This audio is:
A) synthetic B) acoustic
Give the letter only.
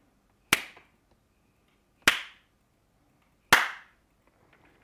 B